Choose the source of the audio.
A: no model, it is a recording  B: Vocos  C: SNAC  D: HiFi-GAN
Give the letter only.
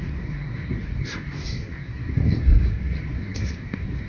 C